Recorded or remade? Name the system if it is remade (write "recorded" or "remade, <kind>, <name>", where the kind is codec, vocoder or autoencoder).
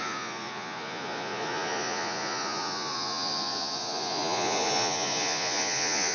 remade, vocoder, Vocos